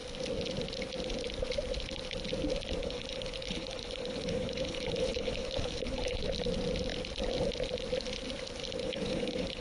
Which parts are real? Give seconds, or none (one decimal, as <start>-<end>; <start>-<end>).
0.0-2.8; 6.2-8.8